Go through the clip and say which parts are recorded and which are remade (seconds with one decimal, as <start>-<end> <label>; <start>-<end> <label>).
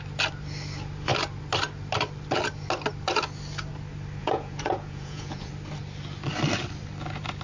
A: 0.0-4.2 recorded; 4.2-5.5 remade; 5.5-7.4 recorded